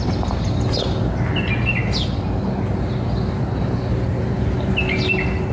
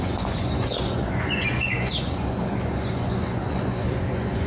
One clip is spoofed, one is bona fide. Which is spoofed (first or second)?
second